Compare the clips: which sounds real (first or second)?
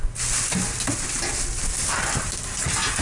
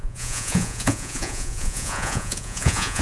first